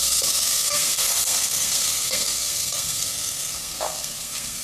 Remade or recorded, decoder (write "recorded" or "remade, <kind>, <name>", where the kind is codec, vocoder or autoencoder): remade, codec, SNAC